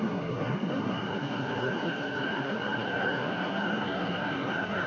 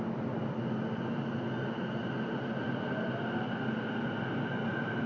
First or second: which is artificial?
first